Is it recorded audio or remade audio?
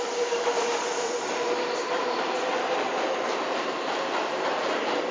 remade